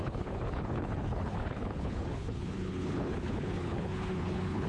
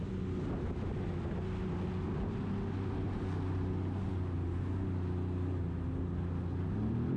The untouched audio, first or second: second